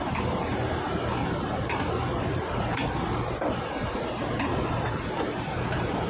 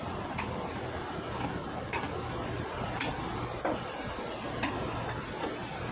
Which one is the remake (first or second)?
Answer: first